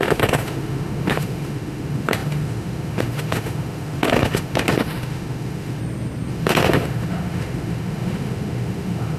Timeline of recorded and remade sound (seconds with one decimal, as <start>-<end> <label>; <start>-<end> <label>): 0.0-5.8 remade; 5.8-6.3 recorded; 6.3-9.2 remade